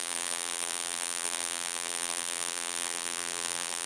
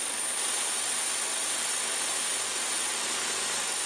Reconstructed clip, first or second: first